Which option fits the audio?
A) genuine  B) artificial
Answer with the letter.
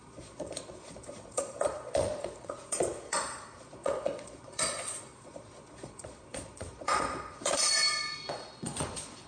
B